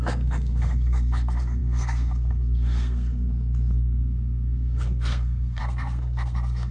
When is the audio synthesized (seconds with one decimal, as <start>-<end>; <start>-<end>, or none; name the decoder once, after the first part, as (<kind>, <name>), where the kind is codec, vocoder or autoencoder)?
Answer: 0.0-6.7 (codec, SNAC)